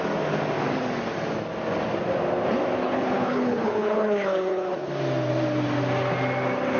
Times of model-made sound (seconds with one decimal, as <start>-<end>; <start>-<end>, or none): 2.8-4.9